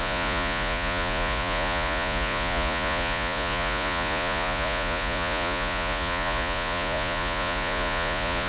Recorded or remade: remade